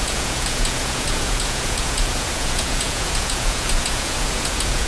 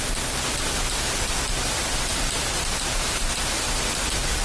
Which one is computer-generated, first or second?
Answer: first